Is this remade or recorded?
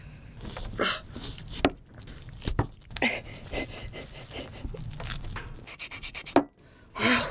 recorded